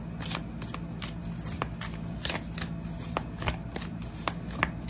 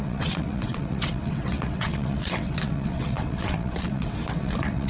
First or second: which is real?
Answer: first